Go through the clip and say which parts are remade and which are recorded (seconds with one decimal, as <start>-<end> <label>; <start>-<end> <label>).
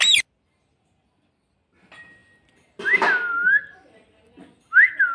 0.0-5.1 recorded